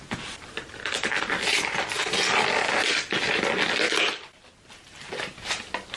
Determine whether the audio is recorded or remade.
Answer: recorded